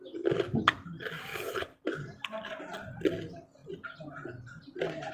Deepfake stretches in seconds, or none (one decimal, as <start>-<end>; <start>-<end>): 1.3-2.6